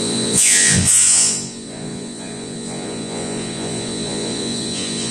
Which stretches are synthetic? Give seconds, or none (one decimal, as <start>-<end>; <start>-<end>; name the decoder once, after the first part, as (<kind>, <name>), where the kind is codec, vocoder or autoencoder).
0.0-5.1 (vocoder, Vocos)